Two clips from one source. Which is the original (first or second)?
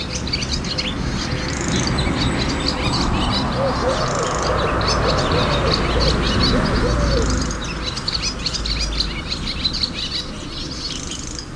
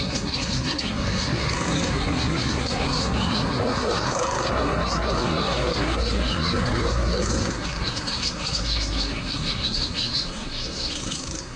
first